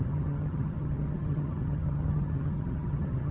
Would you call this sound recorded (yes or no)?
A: no